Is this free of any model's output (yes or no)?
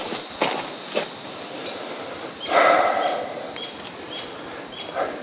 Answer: yes